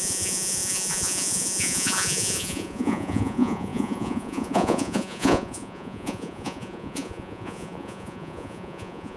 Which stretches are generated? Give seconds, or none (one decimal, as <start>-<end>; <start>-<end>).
0.0-9.2